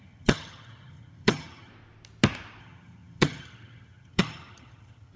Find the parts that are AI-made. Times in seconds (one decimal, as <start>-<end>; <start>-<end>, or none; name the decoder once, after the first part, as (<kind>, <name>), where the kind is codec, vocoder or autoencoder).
0.0-1.7 (vocoder, HiFi-GAN); 2.6-5.2